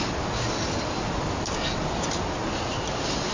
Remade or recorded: recorded